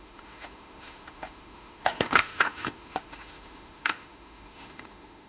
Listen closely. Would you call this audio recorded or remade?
remade